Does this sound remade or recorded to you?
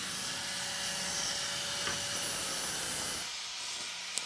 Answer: recorded